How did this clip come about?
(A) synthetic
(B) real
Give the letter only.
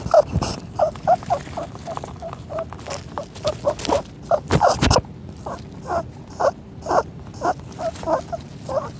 B